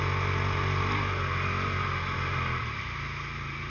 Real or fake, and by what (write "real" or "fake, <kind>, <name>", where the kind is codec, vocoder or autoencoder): real